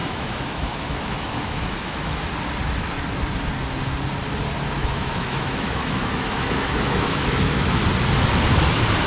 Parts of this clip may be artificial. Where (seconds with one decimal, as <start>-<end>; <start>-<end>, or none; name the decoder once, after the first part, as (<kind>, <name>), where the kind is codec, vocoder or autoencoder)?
0.0-2.3 (autoencoder, DAC-VAE); 4.8-7.8